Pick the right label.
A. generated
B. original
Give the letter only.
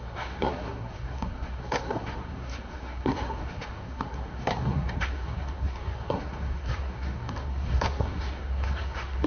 A